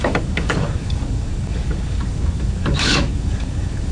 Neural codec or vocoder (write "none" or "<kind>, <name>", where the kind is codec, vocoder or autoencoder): codec, DAC